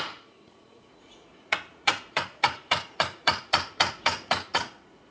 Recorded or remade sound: remade